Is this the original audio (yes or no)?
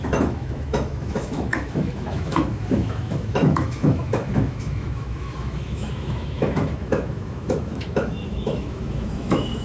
no